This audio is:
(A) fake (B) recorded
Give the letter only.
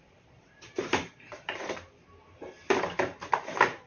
A